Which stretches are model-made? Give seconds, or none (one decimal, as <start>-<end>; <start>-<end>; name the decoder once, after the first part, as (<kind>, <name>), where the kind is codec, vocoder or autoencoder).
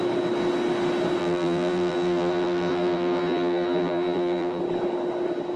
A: 1.2-4.6 (vocoder, BigVGAN v2)